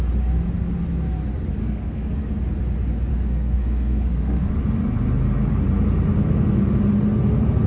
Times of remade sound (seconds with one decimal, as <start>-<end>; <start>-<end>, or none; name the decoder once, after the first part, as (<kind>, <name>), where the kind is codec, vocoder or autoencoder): 1.6-2.3 (codec, SNAC); 3.1-4.5